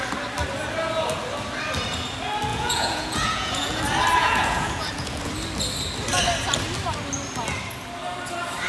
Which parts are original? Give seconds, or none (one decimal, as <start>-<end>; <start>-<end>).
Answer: 0.0-2.5; 3.8-4.2; 5.3-8.7